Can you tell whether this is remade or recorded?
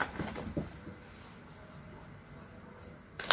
recorded